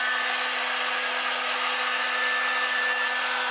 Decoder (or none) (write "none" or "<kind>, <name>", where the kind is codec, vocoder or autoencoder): none